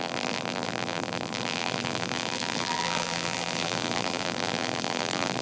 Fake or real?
fake